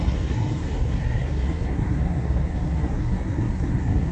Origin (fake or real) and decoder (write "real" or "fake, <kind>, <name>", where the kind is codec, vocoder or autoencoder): fake, codec, SNAC